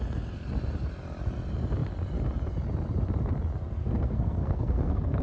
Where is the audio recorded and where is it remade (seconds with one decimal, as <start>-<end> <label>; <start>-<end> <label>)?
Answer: 0.0-3.8 recorded; 3.8-5.2 remade